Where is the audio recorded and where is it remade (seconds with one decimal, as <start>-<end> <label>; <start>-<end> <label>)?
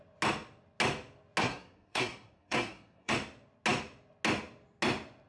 0.0-1.4 recorded; 1.4-3.1 remade; 3.1-5.3 recorded